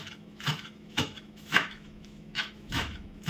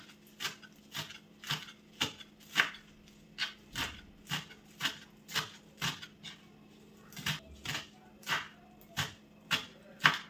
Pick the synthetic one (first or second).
first